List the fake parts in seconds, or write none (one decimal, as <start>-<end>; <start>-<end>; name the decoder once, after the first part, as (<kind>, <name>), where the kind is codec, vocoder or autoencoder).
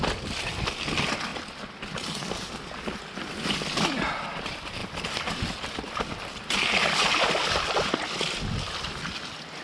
none